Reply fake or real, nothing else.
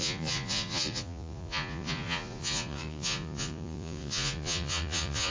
fake